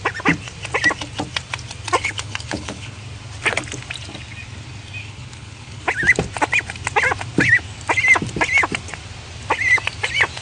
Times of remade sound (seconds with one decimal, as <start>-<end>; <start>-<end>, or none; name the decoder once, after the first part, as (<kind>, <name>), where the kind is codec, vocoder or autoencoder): 2.0-3.0 (codec, HILCodec); 5.0-5.8